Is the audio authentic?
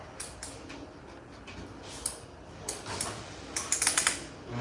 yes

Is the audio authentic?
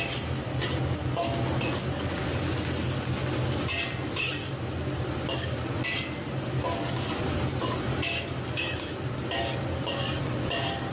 yes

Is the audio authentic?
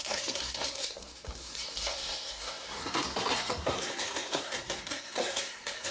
no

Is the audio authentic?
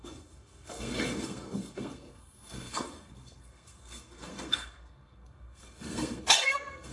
no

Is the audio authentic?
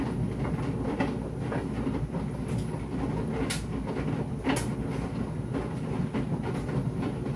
yes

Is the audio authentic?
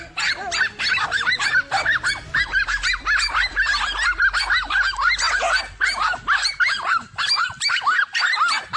yes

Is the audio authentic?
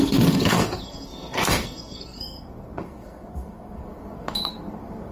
no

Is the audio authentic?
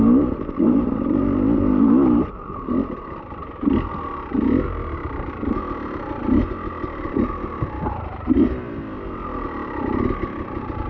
yes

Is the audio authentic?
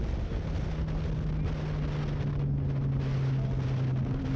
yes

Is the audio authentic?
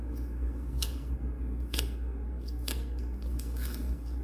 no